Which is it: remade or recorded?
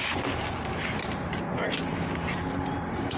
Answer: remade